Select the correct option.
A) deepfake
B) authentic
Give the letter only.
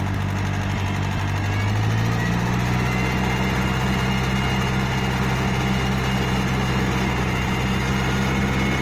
B